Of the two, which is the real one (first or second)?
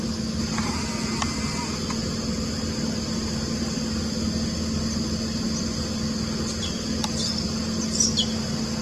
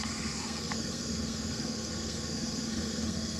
first